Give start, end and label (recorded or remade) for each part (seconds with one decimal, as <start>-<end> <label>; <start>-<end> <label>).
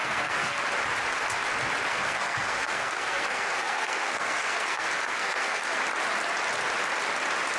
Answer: 0.0-0.6 remade; 0.6-1.9 recorded; 1.9-5.8 remade; 5.8-7.6 recorded